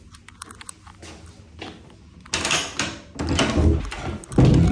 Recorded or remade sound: recorded